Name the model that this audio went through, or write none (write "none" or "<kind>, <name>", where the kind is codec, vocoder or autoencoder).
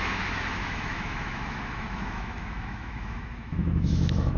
autoencoder, DAC-VAE